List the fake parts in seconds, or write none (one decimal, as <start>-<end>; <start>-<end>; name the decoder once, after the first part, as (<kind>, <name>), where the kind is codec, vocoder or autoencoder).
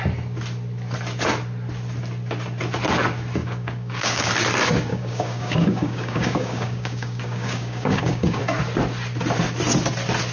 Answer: 3.4-4.3 (codec, DAC); 4.9-8.4